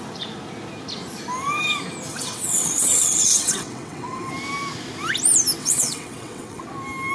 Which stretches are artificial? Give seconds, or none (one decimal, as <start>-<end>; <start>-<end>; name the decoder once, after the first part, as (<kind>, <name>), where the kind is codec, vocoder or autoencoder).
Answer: 2.1-4.3 (vocoder, WaveNeXt); 5.6-6.6